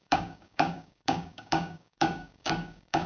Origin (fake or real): fake